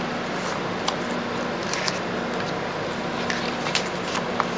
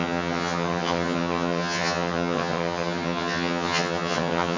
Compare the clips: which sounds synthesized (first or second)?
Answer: second